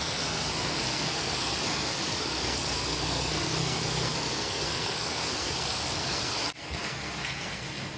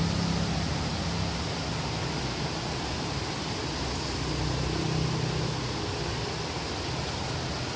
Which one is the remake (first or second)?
first